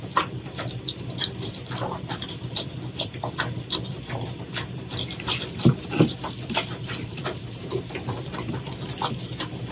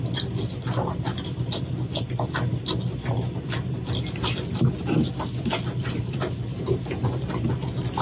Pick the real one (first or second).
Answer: second